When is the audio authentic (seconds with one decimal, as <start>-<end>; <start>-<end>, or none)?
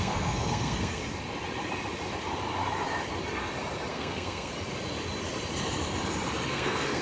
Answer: 1.0-3.9; 4.5-6.5